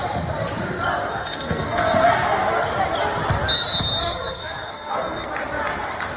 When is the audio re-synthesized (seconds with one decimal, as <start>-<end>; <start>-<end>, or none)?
1.1-2.1; 4.0-5.3